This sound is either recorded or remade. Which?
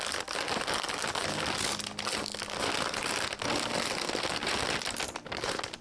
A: recorded